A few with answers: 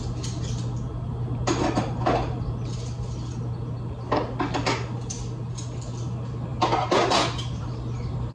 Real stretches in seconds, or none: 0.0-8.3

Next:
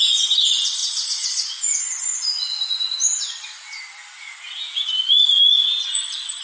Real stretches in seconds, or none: 0.0-0.8; 1.8-6.4

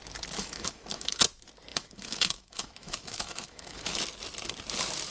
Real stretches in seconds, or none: 0.0-0.4; 1.2-1.7; 4.0-5.1

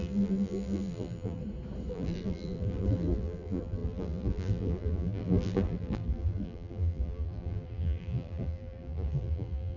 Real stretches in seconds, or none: 1.4-1.9

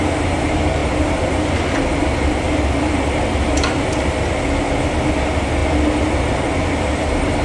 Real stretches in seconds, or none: 0.0-7.4

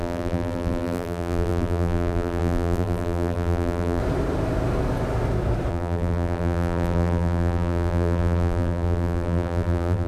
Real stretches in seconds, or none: 4.0-5.7

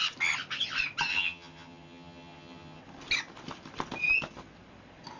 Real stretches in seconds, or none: 0.0-1.1; 2.8-5.2

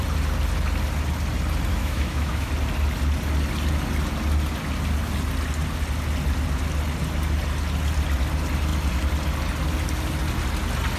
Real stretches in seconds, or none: 0.0-1.7; 2.5-11.0